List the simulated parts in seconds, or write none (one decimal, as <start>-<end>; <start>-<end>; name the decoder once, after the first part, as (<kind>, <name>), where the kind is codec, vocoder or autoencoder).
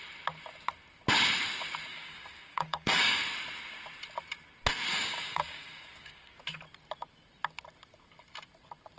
1.9-3.2 (codec, DAC); 4.9-6.4